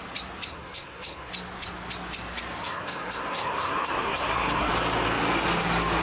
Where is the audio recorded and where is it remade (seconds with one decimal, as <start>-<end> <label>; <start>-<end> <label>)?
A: 0.0-0.5 recorded; 0.5-1.3 remade; 1.3-2.6 recorded; 2.6-4.7 remade; 4.7-6.0 recorded